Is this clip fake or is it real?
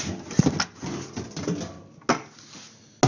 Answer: real